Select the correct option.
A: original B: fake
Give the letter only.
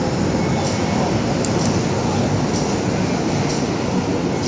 A